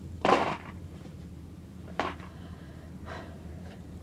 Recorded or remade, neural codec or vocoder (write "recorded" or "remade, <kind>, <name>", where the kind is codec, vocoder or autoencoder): remade, vocoder, BigVGAN v2